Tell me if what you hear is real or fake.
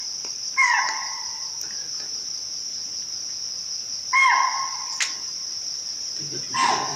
real